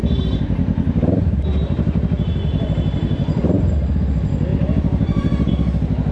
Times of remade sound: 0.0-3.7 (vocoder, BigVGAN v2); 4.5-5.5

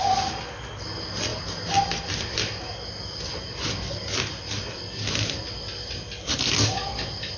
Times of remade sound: none

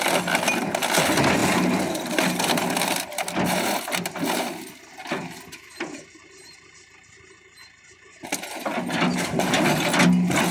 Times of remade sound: none

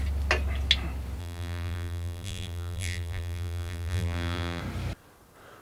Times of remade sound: 1.2-4.6 (vocoder, BigVGAN v2)

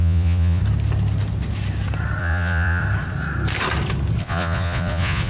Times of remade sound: 0.0-0.6 (vocoder, Vocos); 2.2-2.8; 4.2-5.3